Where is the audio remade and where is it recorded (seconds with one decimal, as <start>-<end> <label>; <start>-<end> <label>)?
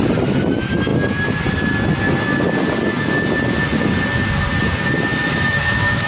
0.0-5.1 recorded; 5.1-6.1 remade